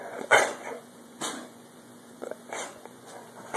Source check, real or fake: fake